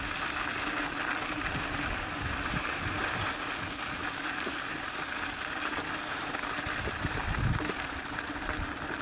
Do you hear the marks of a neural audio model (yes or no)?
no